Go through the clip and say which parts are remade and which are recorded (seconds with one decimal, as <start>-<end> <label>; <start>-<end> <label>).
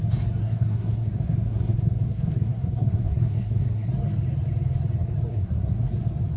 0.0-0.4 recorded; 0.4-3.9 remade; 3.9-5.3 recorded; 5.3-5.9 remade; 5.9-6.4 recorded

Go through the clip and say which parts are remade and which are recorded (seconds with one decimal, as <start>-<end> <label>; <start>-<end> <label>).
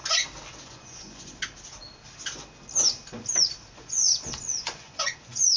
0.0-0.5 recorded; 0.5-1.4 remade; 1.4-3.7 recorded; 3.7-5.6 remade